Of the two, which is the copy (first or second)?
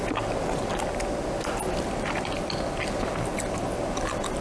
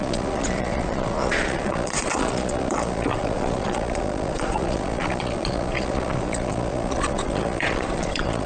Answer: second